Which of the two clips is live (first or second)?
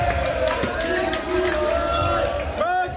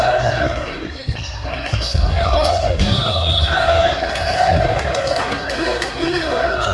first